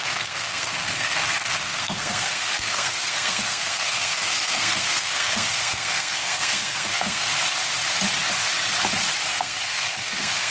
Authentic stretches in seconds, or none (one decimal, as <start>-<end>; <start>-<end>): 7.3-9.3